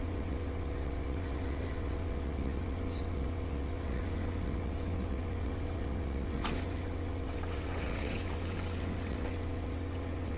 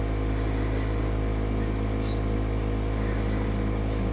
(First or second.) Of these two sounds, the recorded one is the second